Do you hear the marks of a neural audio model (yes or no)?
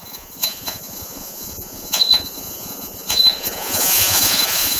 yes